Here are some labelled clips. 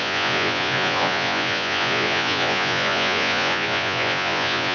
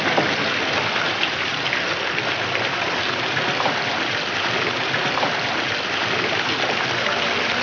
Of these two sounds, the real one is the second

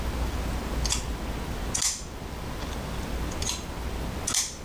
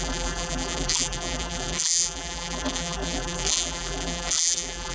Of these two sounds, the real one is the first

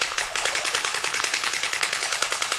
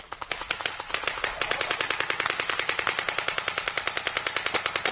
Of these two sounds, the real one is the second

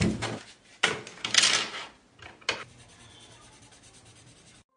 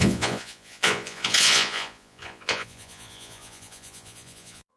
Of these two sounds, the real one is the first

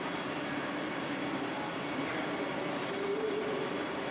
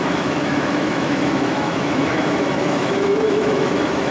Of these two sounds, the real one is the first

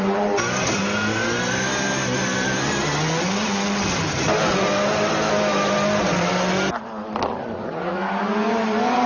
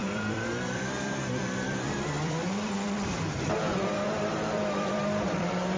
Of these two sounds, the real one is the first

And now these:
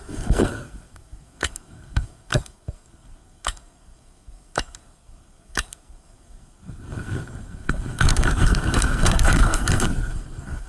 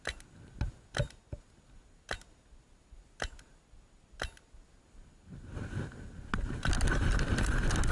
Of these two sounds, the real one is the second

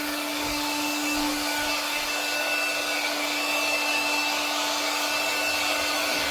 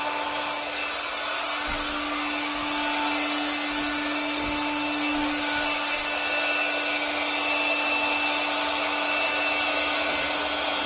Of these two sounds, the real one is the second